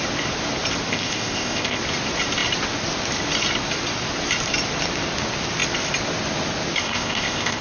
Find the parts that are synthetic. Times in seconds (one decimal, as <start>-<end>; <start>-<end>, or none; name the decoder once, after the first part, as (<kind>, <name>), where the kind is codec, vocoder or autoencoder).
0.9-1.8 (codec, ZipCodec); 6.8-7.6